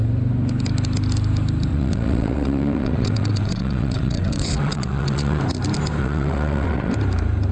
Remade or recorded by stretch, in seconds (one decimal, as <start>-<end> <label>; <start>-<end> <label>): 0.0-1.7 recorded; 1.7-5.4 remade; 5.4-6.0 recorded; 6.0-6.9 remade; 6.9-7.5 recorded